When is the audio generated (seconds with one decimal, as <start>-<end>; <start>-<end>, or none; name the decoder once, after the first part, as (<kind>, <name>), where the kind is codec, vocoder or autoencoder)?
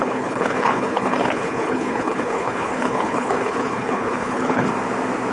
0.0-4.7 (codec, HILCodec)